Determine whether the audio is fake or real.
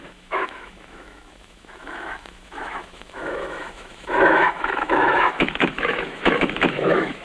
fake